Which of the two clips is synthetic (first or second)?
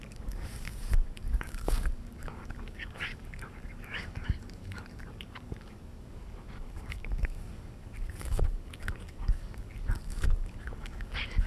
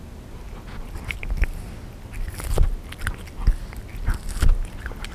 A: first